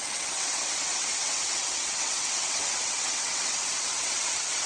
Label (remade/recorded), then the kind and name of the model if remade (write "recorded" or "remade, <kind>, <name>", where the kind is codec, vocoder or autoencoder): remade, vocoder, WaveNeXt